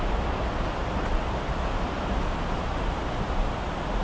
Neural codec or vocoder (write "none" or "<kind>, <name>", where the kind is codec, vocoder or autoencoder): none